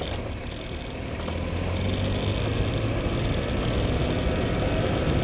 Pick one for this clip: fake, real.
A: real